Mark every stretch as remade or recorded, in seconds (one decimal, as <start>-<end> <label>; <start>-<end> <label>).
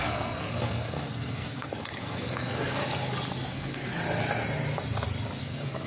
0.0-2.8 remade; 2.8-3.5 recorded; 3.5-3.9 remade; 3.9-5.4 recorded; 5.4-5.9 remade